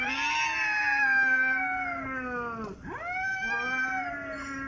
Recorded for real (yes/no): yes